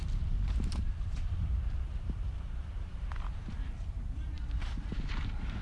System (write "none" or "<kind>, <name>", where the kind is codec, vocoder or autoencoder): vocoder, BigVGAN v2